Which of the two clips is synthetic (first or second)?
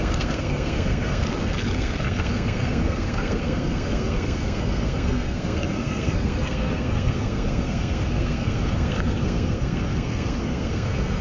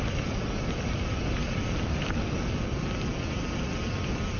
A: first